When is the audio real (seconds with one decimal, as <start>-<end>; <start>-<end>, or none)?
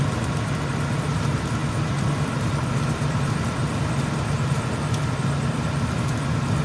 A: 0.0-6.6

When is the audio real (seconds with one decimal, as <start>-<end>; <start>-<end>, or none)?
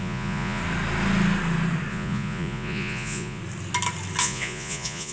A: 0.6-1.9; 3.4-4.2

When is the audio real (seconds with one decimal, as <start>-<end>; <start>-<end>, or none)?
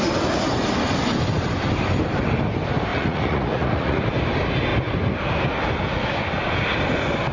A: 0.0-2.9; 4.0-7.3